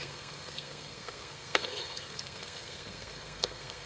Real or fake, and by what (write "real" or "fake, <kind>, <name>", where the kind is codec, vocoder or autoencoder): fake, codec, SNAC